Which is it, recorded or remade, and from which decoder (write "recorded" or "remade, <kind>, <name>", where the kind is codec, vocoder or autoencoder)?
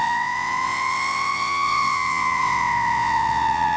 remade, vocoder, WaveNeXt